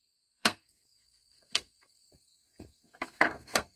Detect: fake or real fake